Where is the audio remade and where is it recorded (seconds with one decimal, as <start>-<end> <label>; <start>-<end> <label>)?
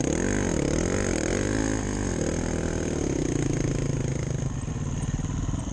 0.0-5.7 recorded